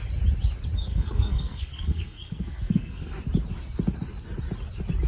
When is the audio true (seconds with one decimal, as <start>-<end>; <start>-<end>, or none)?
0.0-0.8; 3.2-5.1